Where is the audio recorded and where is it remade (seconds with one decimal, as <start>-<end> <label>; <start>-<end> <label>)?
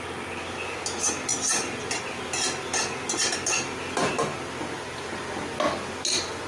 0.0-6.5 recorded